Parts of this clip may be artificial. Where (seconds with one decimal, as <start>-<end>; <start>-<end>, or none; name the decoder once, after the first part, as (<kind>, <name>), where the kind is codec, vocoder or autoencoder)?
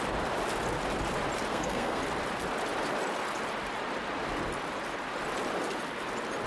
1.5-2.0 (codec, SNAC)